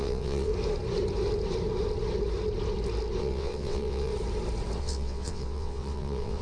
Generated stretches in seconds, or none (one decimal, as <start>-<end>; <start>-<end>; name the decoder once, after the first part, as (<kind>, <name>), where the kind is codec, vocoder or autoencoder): 0.0-0.5 (vocoder, WaveNeXt); 3.2-4.1; 4.8-6.4